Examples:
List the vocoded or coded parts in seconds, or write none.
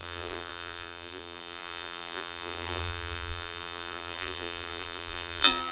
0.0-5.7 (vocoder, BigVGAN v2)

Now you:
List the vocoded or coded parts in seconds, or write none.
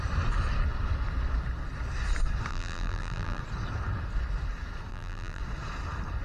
2.5-3.4 (vocoder, BigVGAN v2); 4.9-5.4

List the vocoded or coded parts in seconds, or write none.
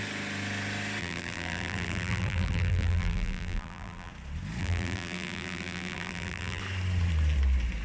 1.0-4.1 (vocoder, BigVGAN v2); 4.6-6.6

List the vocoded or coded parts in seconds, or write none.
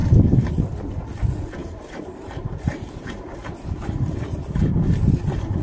1.6-4.7 (vocoder, BigVGAN v2)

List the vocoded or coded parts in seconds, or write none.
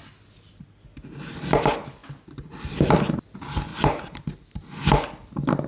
3.7-4.2 (vocoder, BigVGAN v2)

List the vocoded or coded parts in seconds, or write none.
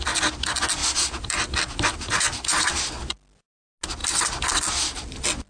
0.8-2.9 (vocoder, BigVGAN v2)